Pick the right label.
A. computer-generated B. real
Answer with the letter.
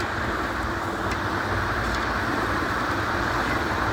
A